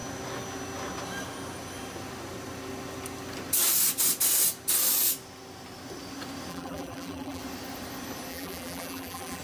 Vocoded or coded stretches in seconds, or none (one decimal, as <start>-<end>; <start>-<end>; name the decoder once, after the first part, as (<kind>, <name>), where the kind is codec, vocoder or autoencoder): 6.5-7.4 (vocoder, BigVGAN v2); 8.3-9.4